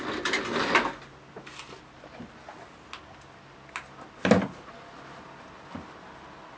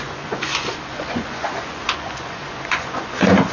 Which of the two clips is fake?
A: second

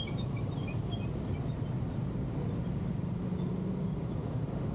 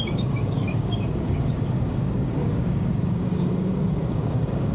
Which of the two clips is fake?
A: second